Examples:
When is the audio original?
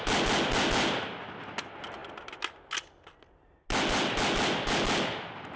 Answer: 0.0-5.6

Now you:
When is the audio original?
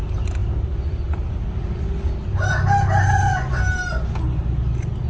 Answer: 0.0-5.1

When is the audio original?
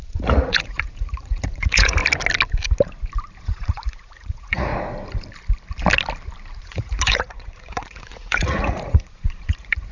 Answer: 2.0-3.4; 4.7-6.6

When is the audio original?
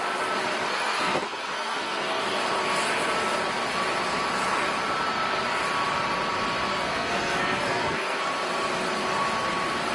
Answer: 0.0-0.7; 2.2-6.7; 8.3-9.9